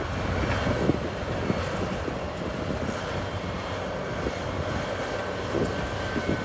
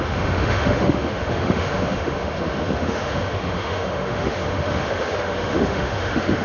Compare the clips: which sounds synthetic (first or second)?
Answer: second